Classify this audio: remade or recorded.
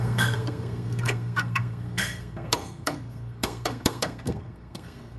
remade